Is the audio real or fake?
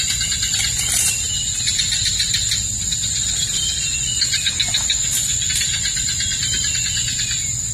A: real